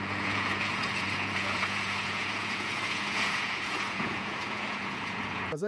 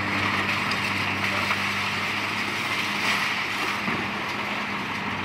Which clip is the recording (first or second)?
second